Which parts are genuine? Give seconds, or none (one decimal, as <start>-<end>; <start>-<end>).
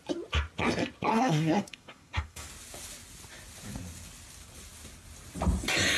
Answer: 0.0-1.1; 2.5-6.0